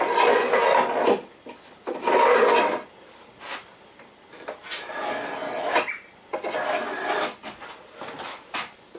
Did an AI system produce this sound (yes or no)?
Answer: no